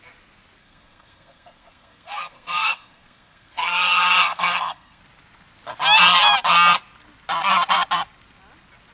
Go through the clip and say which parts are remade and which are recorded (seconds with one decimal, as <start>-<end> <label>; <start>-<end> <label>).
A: 0.0-0.6 recorded; 0.6-5.0 remade; 5.0-8.9 recorded